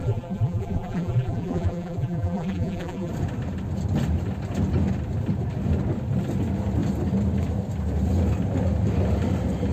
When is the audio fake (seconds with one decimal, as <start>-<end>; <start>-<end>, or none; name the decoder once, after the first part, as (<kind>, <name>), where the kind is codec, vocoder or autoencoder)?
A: 0.0-3.1 (vocoder, BigVGAN v2)